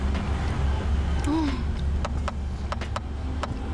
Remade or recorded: recorded